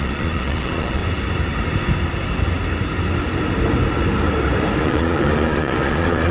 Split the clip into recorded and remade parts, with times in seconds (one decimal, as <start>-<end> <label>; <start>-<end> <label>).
0.0-1.0 remade; 1.0-4.8 recorded; 4.8-6.3 remade